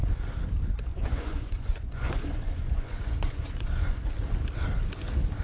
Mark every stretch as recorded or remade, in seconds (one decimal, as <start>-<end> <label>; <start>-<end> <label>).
0.0-0.9 recorded; 0.9-4.1 remade; 4.1-5.4 recorded